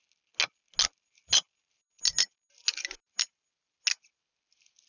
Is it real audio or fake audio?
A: real